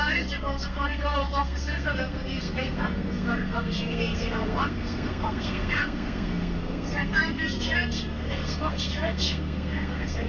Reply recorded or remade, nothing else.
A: remade